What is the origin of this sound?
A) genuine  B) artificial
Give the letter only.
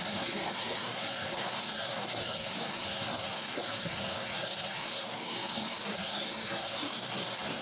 B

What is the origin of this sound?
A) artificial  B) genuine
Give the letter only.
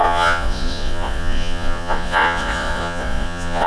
A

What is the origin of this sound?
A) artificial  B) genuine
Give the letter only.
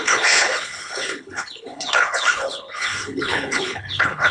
A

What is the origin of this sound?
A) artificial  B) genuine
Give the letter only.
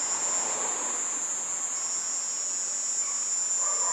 B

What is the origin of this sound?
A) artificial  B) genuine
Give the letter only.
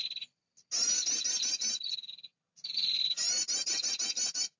B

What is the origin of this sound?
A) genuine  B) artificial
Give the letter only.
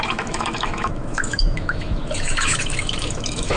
B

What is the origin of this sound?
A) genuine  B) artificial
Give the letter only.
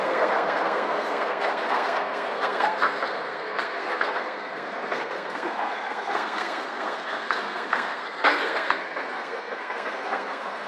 B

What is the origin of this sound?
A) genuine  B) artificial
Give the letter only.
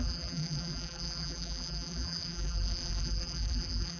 B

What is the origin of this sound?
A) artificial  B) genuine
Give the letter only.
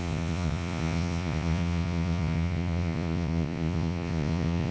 A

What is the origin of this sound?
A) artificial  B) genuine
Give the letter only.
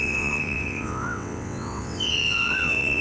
A